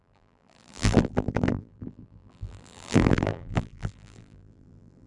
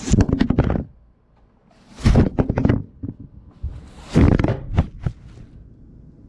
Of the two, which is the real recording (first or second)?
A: second